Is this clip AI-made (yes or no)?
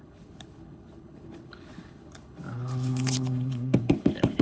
yes